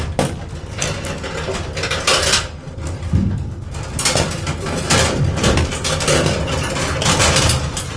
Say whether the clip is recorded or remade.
recorded